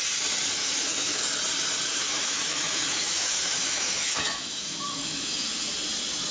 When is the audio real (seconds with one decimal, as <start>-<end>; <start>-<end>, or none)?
0.0-0.6; 1.2-1.9; 5.6-6.3